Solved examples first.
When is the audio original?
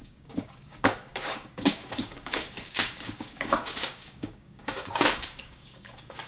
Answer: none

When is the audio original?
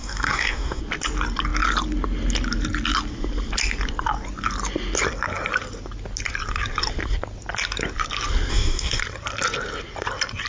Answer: 0.8-8.5; 9.0-10.5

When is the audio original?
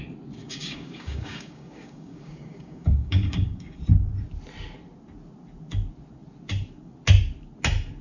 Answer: 0.0-0.4; 3.8-8.0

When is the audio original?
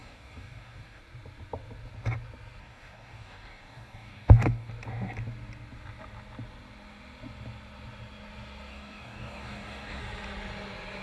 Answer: 1.0-2.6; 4.7-8.7; 10.0-11.0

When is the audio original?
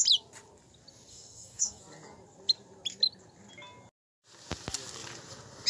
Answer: 0.0-1.1; 1.8-5.7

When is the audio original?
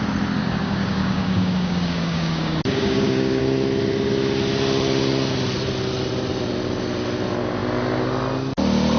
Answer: 0.0-0.4; 3.4-9.0